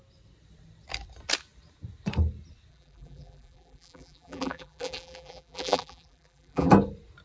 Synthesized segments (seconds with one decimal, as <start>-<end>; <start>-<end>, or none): 2.7-6.7